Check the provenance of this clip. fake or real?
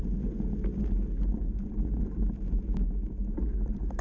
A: real